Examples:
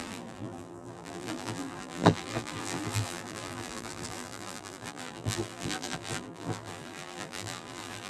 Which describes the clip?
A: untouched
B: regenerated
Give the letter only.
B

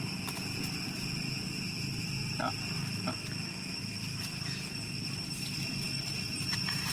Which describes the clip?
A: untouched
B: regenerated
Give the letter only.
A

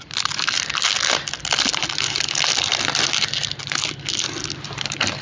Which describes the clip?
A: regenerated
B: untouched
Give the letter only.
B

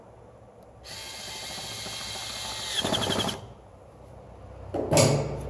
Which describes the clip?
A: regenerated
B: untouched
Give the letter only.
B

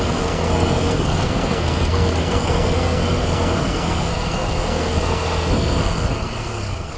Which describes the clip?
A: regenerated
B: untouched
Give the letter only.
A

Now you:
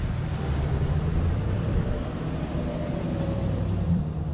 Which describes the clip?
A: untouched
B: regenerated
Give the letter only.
B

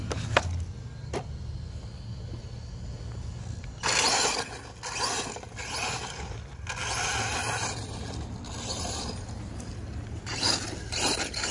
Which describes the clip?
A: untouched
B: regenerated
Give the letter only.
A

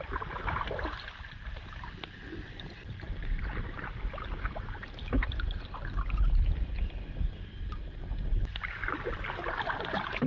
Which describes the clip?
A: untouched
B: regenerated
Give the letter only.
B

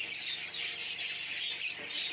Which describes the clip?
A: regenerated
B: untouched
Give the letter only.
B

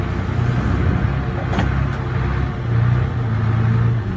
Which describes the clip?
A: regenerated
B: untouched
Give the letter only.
B